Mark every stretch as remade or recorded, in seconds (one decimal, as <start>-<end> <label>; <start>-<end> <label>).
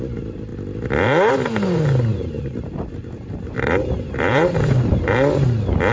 0.0-2.1 recorded; 2.1-5.0 remade; 5.0-5.9 recorded